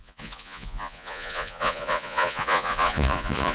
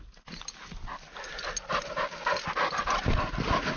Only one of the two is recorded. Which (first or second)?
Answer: second